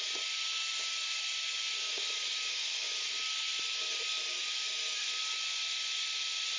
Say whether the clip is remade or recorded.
recorded